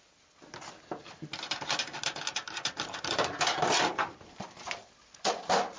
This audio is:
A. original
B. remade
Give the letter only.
A